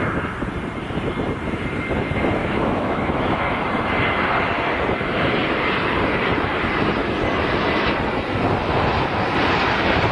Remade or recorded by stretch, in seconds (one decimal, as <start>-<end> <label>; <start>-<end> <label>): 0.0-2.4 recorded; 2.4-3.6 remade; 3.6-10.1 recorded